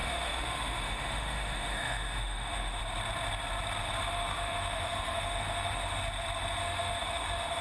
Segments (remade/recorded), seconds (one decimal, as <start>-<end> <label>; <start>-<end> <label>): 0.0-2.8 remade; 2.8-4.0 recorded; 4.0-6.0 remade; 6.0-6.6 recorded; 6.6-7.6 remade

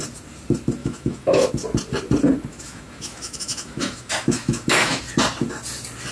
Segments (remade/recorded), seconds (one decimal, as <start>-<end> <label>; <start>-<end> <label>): 0.0-0.8 recorded; 0.8-1.5 remade; 1.5-2.5 recorded; 2.5-5.0 remade; 5.0-6.1 recorded

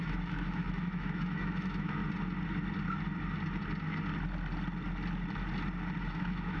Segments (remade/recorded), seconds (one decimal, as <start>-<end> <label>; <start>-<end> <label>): 0.0-2.0 remade; 2.0-6.0 recorded; 6.0-6.6 remade

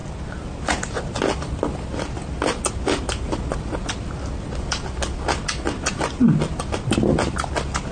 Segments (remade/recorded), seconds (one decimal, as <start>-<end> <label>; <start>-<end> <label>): 0.0-7.9 recorded

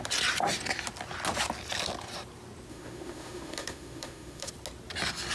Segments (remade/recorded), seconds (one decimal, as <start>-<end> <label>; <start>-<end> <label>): 0.0-2.7 recorded; 2.7-4.5 remade; 4.5-5.3 recorded

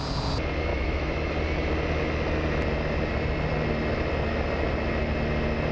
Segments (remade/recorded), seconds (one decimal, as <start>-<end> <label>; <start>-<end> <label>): 0.0-0.7 recorded; 0.7-1.3 remade; 1.3-5.7 recorded

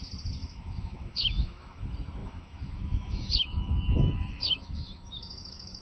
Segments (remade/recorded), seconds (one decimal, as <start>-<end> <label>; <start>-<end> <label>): 0.0-0.4 recorded; 0.4-1.8 remade; 1.8-2.2 recorded; 2.2-5.8 remade